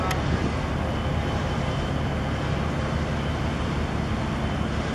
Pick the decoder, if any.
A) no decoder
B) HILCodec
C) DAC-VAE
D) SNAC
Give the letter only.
A